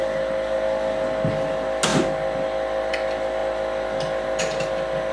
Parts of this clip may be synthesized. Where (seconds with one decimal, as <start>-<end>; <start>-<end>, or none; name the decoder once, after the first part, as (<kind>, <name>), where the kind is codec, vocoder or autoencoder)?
none